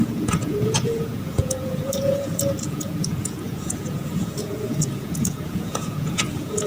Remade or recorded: remade